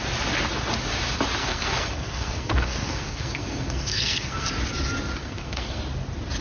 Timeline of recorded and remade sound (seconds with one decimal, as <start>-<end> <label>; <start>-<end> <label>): 0.0-1.4 recorded; 1.4-4.5 remade; 4.5-5.2 recorded; 5.2-5.8 remade; 5.8-6.4 recorded